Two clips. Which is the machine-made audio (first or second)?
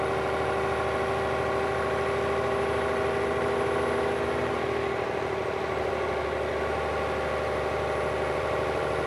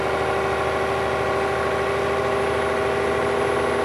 first